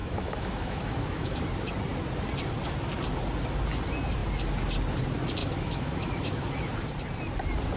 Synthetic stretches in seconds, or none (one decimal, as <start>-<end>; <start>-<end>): 0.0-1.4; 5.4-6.7